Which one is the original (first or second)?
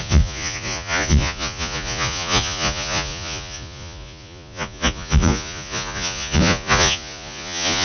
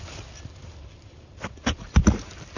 second